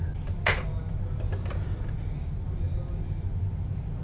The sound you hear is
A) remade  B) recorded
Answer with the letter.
B